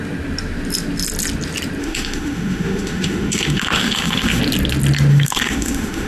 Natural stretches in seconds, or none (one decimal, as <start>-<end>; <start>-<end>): 0.0-1.8; 4.4-5.1